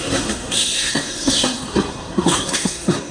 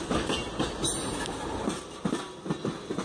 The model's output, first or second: first